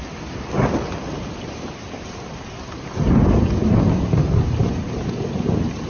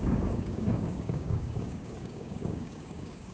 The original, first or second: first